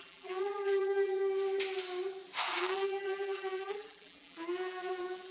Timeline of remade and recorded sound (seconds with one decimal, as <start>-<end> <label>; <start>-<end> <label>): 0.0-1.2 remade; 1.2-2.6 recorded; 2.6-5.3 remade